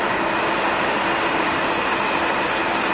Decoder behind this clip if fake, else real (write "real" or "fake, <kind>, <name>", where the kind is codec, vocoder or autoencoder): real